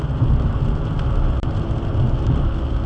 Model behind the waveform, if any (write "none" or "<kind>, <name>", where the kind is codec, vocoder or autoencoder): none